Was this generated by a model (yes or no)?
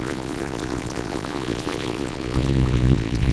yes